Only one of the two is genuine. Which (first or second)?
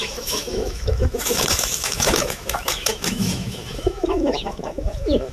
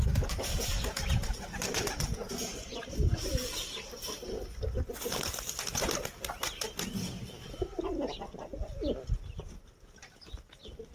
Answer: second